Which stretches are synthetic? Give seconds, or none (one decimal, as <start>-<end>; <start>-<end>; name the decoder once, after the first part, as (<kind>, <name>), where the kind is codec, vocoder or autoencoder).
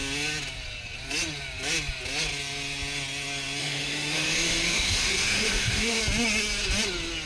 3.6-6.0 (autoencoder, DAC-VAE)